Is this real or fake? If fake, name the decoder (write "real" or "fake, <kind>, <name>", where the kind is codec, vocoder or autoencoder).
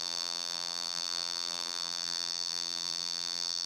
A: fake, vocoder, BigVGAN v2